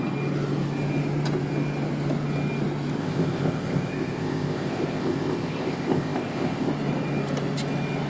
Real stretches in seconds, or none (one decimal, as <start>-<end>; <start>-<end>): 0.0-3.0; 6.7-8.1